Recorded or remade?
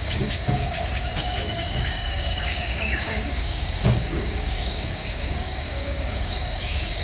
remade